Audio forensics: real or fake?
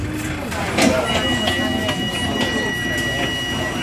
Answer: real